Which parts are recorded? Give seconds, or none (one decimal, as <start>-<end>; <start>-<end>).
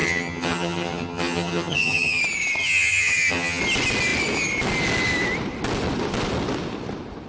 2.2-2.6; 3.6-7.3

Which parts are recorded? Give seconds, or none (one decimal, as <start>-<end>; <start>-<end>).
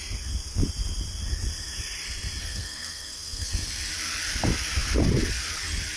0.0-2.4; 3.5-6.0